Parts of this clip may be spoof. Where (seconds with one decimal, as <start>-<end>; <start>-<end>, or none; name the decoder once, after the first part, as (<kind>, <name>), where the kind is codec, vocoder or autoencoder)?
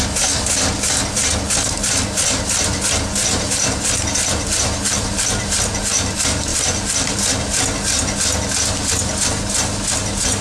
6.5-7.3 (vocoder, BigVGAN v2)